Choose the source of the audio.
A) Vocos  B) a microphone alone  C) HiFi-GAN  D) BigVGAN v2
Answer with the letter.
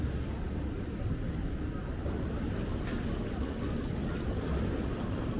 B